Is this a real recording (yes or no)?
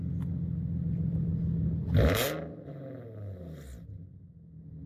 yes